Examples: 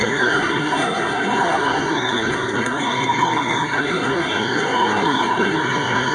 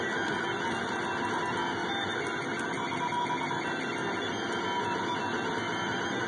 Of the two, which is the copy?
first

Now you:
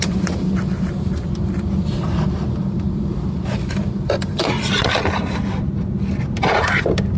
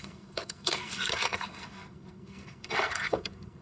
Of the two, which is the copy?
second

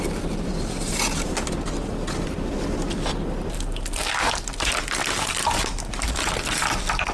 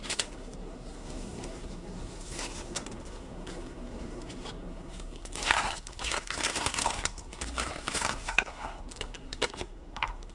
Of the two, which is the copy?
second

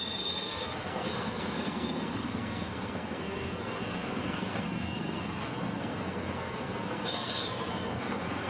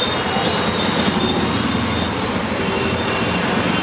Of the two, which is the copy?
first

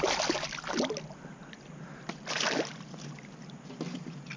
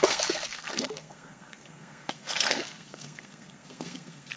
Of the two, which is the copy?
second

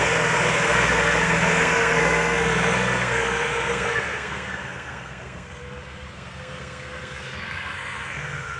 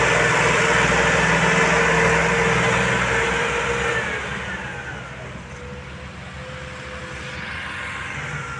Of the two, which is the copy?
first